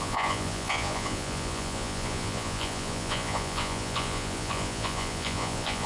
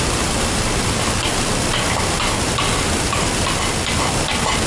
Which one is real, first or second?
second